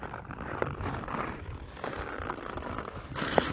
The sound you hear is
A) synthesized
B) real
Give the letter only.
B